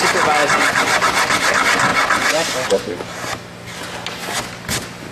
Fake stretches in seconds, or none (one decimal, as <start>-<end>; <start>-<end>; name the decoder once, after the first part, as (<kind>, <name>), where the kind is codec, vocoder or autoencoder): none